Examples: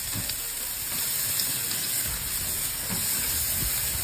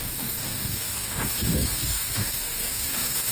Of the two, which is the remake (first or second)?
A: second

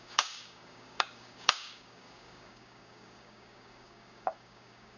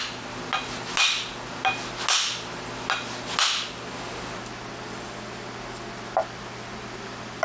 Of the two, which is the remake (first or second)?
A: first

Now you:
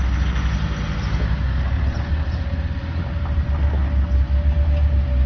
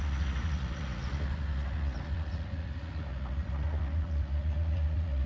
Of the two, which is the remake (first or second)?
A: second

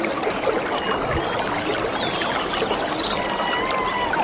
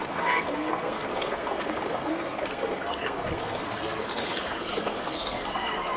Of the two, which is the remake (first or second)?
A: second